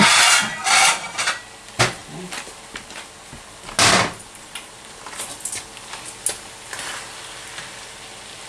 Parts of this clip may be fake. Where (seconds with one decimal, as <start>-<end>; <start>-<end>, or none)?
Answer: none